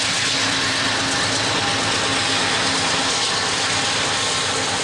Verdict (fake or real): real